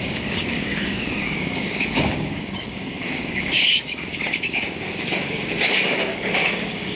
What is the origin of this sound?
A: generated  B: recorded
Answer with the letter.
A